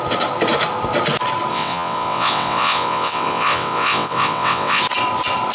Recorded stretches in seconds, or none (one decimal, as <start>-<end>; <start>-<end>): 0.0-1.5; 4.8-5.5